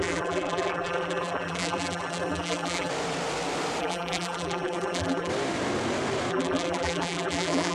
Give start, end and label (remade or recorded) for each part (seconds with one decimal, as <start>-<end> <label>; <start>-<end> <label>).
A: 0.0-2.9 remade; 2.9-3.8 recorded; 3.8-5.3 remade; 5.3-6.3 recorded; 6.3-7.7 remade